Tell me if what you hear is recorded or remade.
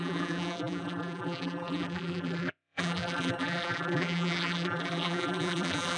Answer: remade